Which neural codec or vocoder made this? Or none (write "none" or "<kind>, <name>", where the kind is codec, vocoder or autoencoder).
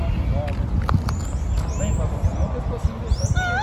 none